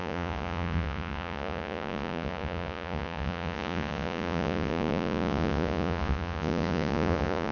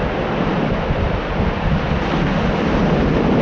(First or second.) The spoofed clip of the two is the first